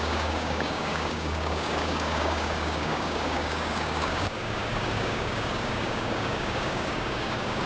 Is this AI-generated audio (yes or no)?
yes